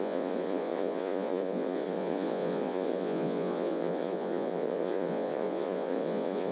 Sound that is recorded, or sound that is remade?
remade